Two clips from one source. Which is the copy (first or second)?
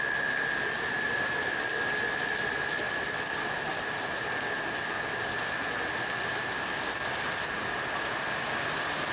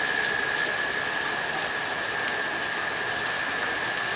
second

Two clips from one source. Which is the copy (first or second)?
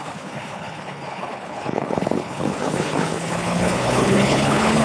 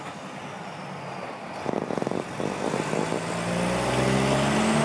first